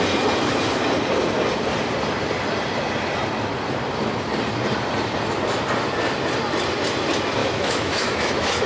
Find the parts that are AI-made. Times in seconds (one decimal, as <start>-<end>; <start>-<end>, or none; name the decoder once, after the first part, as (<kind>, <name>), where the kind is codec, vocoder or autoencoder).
7.4-8.7 (autoencoder, DAC-VAE)